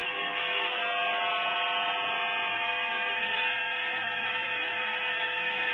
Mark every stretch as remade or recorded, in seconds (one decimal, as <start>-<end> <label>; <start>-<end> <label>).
0.0-0.8 remade; 0.8-2.5 recorded; 2.5-5.7 remade